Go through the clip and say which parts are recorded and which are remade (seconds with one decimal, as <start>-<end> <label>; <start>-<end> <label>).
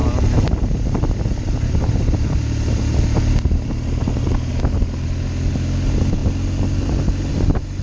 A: 0.0-7.8 recorded